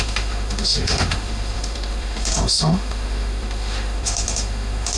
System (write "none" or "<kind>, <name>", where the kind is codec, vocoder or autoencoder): autoencoder, DAC-VAE